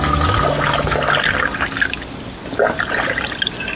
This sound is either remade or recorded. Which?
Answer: recorded